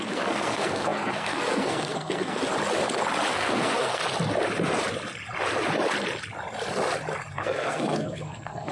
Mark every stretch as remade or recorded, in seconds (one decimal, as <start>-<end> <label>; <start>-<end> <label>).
0.0-2.4 remade; 2.4-3.3 recorded; 3.3-4.0 remade; 4.0-7.3 recorded; 7.3-8.7 remade